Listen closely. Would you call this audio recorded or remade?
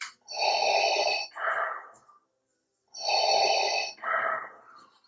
recorded